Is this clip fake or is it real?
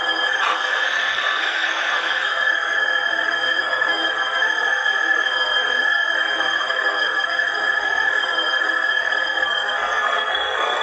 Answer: fake